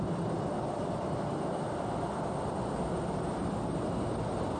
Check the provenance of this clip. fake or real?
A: real